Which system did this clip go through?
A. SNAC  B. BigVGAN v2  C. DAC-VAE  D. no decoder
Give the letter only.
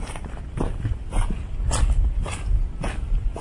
D